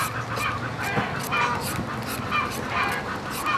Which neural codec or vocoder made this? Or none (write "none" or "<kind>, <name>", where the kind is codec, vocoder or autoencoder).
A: none